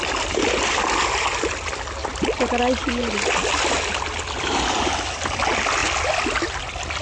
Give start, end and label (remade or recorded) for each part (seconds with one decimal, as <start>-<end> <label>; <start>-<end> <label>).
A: 0.0-7.0 recorded